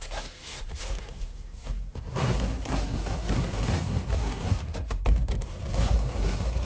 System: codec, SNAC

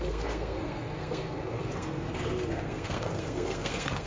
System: codec, SNAC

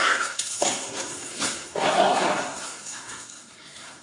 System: codec, SNAC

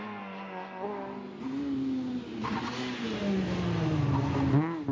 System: none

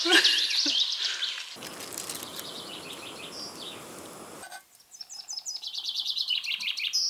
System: none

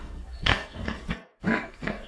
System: codec, SNAC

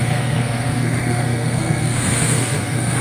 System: codec, SNAC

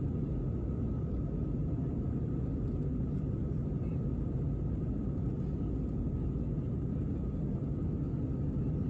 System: none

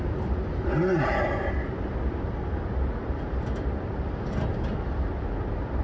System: none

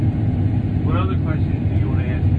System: none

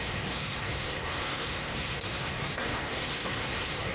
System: codec, SNAC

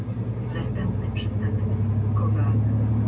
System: none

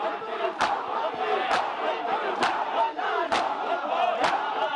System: none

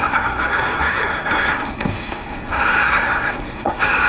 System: codec, SNAC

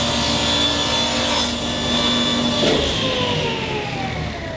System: none